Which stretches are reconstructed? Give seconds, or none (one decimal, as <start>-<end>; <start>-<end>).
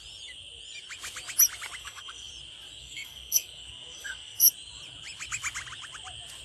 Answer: 1.8-2.3; 2.8-4.5